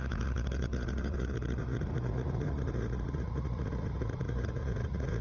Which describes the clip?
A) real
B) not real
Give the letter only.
B